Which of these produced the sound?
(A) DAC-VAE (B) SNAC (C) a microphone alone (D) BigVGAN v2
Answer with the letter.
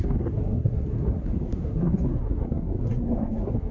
B